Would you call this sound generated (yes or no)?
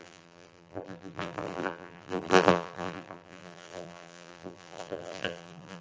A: yes